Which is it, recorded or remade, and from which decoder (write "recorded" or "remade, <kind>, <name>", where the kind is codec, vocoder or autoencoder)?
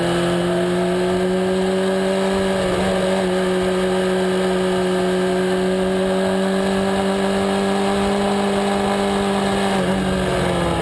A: recorded